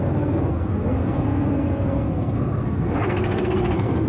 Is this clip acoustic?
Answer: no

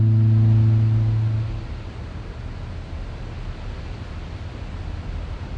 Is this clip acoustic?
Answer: yes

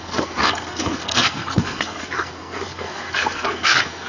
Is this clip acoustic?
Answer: no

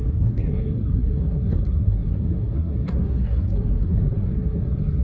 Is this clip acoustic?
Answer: no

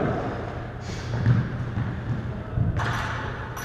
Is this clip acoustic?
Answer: yes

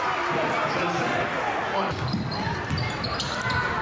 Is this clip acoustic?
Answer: yes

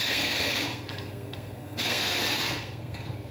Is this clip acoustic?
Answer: no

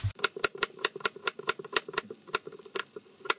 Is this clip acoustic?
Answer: yes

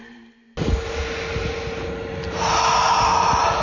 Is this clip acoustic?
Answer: yes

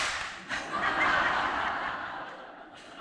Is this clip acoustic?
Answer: yes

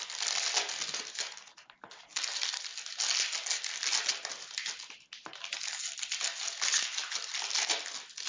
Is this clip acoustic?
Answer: yes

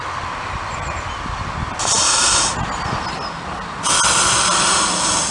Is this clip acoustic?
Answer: yes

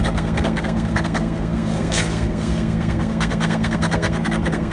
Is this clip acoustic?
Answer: no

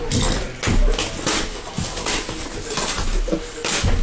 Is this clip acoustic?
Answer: yes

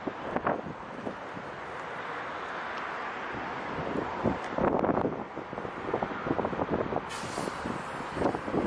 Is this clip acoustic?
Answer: yes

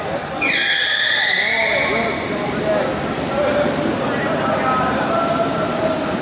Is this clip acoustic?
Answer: yes